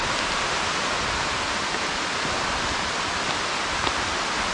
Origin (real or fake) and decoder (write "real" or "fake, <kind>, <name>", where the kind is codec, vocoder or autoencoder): real